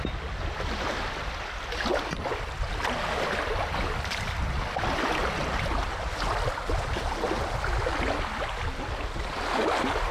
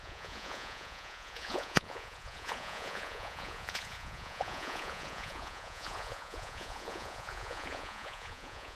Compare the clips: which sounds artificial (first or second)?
second